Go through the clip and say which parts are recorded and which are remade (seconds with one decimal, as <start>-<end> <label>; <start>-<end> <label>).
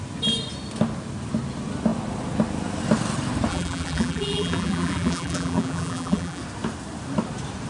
0.0-3.5 recorded; 3.5-6.4 remade; 6.4-7.7 recorded